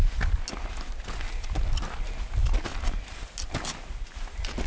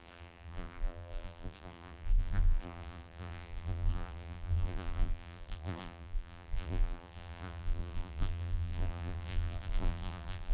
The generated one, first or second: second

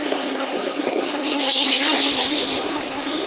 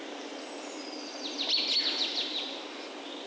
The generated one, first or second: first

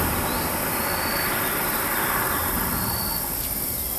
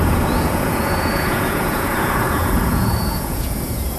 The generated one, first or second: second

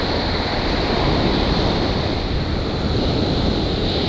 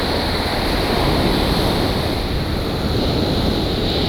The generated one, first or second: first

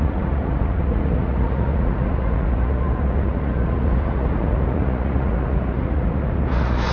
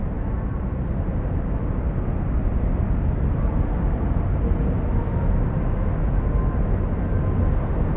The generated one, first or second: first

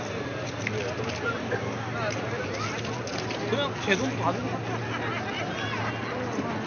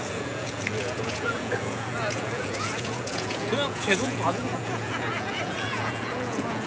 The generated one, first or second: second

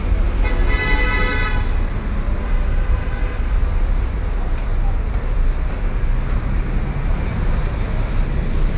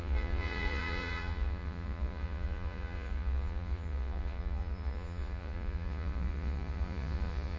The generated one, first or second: second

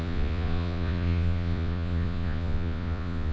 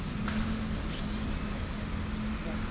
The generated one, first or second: first